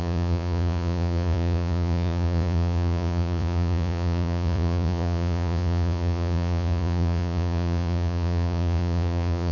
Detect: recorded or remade remade